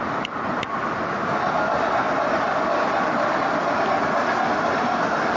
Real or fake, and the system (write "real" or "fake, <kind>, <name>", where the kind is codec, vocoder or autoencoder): real